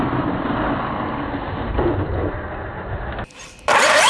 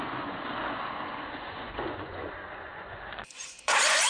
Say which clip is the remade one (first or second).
second